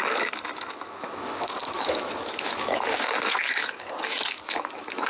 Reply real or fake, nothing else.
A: fake